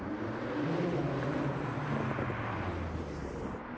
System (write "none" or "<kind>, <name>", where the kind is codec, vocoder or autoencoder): none